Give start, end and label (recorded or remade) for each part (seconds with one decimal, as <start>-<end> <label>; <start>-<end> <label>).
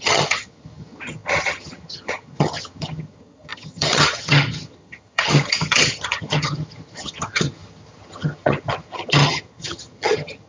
0.0-10.5 remade